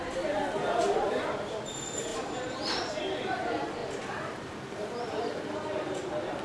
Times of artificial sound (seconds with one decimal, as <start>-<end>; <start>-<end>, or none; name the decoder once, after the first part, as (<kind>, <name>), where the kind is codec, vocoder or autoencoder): 0.0-2.1 (vocoder, BigVGAN v2); 2.9-6.4